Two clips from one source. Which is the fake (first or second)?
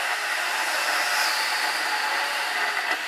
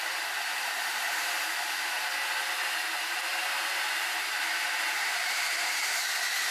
second